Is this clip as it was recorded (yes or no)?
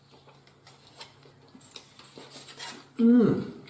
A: yes